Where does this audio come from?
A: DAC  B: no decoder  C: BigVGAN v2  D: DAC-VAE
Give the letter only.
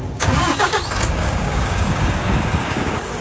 A